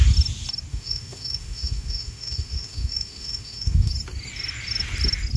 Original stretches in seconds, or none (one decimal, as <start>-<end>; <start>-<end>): 0.0-0.7; 3.9-5.4